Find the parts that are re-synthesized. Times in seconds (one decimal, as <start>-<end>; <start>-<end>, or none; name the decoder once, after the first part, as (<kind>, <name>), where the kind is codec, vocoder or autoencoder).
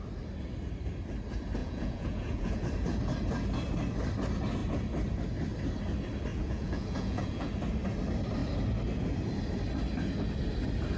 1.6-2.6 (vocoder, Vocos); 6.3-7.5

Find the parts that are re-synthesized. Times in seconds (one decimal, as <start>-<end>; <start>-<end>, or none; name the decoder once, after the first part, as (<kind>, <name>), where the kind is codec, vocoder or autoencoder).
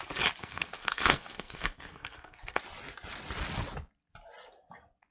0.4-2.6 (codec, SNAC)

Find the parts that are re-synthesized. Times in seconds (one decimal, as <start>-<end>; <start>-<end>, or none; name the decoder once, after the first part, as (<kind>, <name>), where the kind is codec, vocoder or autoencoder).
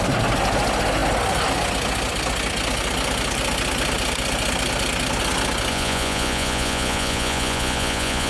5.7-8.3 (vocoder, Vocos)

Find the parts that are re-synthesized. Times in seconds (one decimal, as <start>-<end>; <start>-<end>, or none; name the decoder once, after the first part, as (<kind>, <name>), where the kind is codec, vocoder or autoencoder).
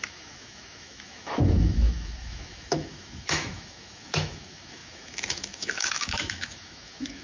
0.0-7.2 (autoencoder, DAC-VAE)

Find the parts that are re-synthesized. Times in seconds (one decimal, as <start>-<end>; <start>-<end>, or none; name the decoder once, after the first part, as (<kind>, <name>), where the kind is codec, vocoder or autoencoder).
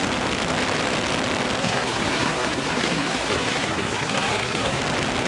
1.6-4.8 (codec, SNAC)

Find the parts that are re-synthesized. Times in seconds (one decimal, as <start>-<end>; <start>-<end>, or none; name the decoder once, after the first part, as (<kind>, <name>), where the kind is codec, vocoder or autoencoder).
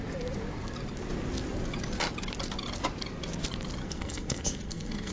3.8-5.1 (codec, SNAC)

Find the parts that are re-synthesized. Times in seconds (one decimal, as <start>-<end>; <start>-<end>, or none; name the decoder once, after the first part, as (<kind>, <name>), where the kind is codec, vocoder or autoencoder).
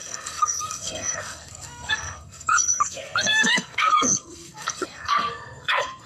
0.0-6.1 (codec, SNAC)